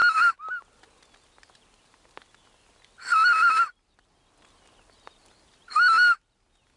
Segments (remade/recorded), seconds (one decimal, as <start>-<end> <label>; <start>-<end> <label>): 0.0-6.8 recorded